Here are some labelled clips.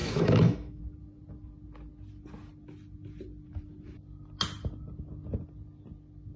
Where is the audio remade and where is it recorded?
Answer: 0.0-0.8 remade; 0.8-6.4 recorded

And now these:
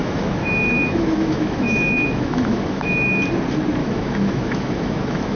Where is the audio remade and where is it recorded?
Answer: 0.0-3.2 remade; 3.2-3.8 recorded; 3.8-5.4 remade

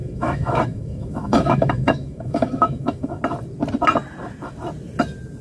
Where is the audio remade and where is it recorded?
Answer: 0.0-3.2 remade; 3.2-5.4 recorded